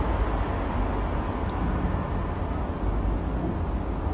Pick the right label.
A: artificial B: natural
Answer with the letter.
B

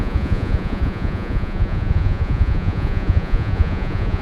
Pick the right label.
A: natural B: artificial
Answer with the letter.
B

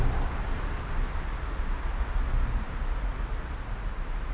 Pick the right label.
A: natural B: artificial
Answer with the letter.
A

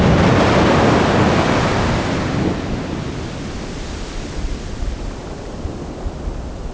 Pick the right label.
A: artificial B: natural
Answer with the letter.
B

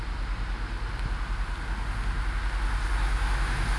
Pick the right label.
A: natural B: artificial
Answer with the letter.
A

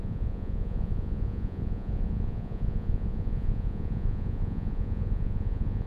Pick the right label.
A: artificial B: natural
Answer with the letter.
A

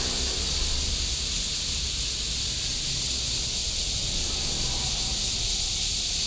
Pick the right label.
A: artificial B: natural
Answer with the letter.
B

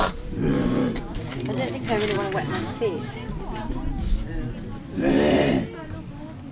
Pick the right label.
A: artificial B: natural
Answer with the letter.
B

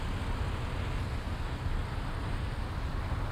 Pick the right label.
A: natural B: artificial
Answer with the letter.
A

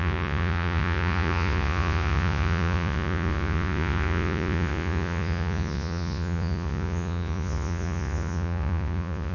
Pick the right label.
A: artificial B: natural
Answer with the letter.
A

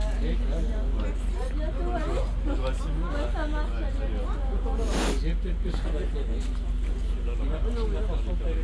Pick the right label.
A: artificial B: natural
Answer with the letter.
B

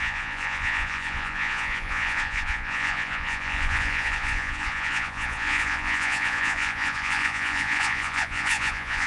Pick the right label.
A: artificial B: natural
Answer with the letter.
A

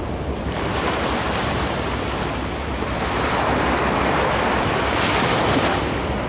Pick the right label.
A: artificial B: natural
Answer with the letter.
B